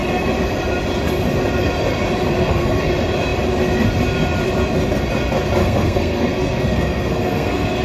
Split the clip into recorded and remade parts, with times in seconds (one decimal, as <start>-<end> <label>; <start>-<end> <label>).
0.0-2.4 recorded; 2.4-2.9 remade; 2.9-5.6 recorded; 5.6-7.8 remade